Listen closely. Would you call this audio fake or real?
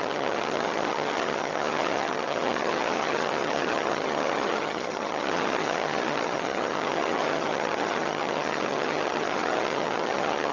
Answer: fake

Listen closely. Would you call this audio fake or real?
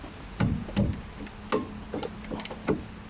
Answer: real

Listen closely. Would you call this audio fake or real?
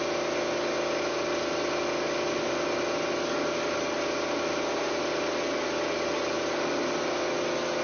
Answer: real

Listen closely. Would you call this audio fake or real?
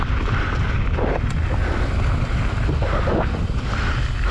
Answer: real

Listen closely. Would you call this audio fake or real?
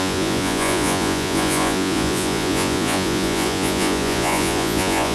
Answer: fake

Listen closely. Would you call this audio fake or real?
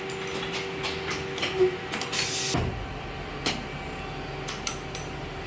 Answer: real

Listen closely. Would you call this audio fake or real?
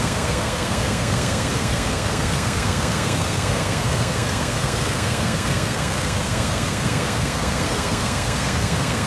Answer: fake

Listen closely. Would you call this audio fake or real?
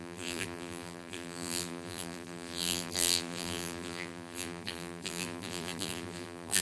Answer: fake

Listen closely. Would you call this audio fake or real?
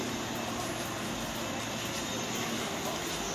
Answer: real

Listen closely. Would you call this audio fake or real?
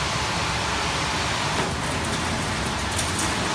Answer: real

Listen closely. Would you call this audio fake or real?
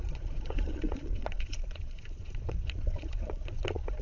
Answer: fake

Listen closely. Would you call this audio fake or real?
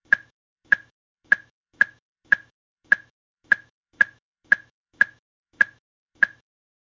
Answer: fake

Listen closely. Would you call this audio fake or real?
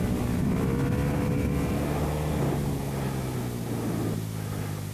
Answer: real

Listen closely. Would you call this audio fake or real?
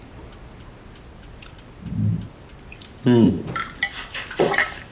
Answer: real